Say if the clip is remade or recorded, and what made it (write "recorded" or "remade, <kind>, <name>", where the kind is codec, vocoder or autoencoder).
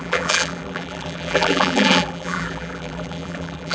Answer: remade, vocoder, BigVGAN v2